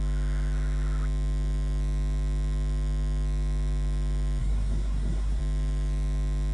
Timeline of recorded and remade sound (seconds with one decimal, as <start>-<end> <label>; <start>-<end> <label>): 0.0-4.4 recorded; 4.4-5.4 remade; 5.4-6.5 recorded